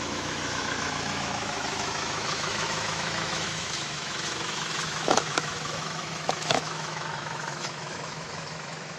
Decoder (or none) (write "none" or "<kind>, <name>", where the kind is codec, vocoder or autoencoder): autoencoder, DAC-VAE